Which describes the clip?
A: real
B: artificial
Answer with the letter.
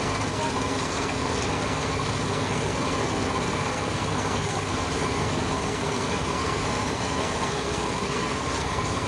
B